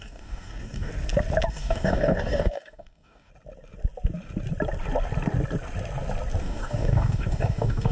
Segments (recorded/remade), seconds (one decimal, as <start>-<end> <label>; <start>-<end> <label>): 0.0-0.9 remade; 0.9-1.5 recorded; 1.5-3.3 remade; 3.3-6.4 recorded; 6.4-7.9 remade